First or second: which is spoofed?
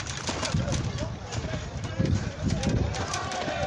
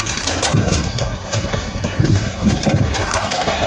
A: second